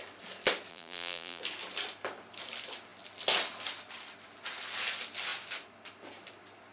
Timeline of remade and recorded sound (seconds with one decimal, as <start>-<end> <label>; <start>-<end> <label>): 0.0-0.7 recorded; 0.7-1.4 remade; 1.4-6.7 recorded